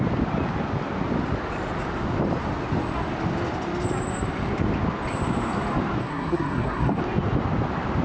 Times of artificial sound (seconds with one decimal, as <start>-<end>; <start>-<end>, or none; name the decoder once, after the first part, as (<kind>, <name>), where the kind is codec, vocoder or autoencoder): 6.0-7.0 (codec, SNAC)